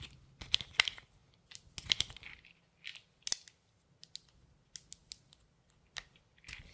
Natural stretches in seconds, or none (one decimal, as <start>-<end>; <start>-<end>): 0.0-6.7